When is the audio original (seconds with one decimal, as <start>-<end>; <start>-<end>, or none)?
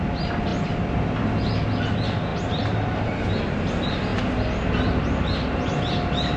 0.0-2.3; 3.3-6.4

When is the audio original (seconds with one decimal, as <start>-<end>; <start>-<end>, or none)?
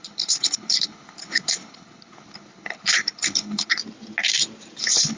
3.8-4.8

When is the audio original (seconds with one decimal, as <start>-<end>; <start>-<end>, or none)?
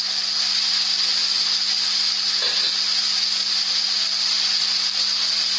0.0-5.6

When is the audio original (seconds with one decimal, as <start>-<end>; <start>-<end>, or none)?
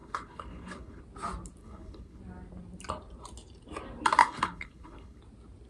1.0-1.6; 2.2-4.2; 5.2-5.7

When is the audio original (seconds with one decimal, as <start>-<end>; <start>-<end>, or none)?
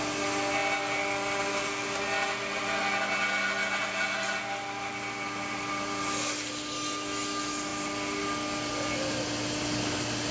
0.0-10.3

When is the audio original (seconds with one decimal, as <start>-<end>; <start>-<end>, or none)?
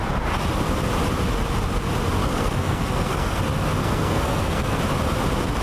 0.0-2.2; 3.4-3.8; 4.8-5.6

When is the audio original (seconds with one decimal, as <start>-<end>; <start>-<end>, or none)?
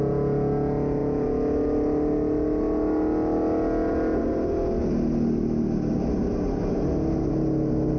0.0-8.0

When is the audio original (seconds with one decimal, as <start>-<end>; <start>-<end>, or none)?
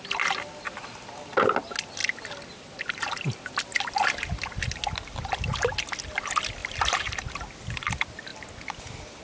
0.0-6.6; 7.3-9.2